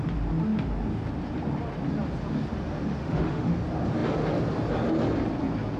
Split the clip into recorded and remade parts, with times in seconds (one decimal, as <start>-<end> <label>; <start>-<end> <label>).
0.0-3.0 recorded; 3.0-3.5 remade; 3.5-5.8 recorded